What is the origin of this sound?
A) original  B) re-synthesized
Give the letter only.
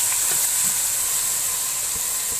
A